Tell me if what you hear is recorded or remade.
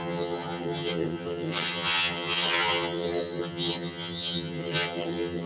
remade